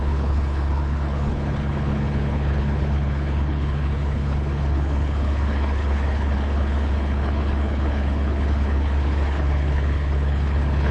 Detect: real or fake fake